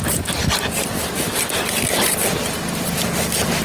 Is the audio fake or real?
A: real